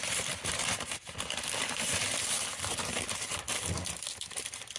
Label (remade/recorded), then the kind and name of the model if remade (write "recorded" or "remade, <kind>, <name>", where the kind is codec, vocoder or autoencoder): recorded